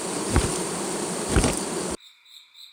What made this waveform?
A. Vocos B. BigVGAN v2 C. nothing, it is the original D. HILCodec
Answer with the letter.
B